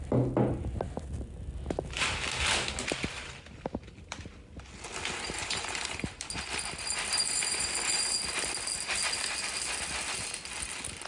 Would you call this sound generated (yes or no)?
no